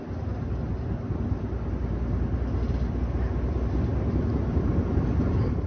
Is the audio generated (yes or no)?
no